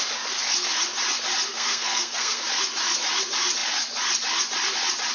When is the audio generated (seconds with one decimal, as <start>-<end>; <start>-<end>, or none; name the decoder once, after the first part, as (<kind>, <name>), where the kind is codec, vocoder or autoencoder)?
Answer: 1.5-2.4 (codec, SNAC)